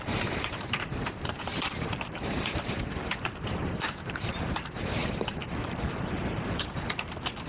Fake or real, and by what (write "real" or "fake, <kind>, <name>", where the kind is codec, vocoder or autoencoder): fake, vocoder, BigVGAN v2